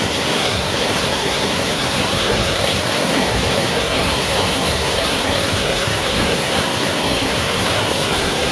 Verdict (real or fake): fake